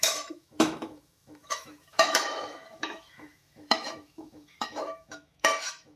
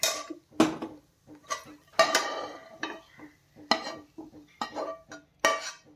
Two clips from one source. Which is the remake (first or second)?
first